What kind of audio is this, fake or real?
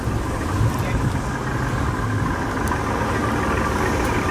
real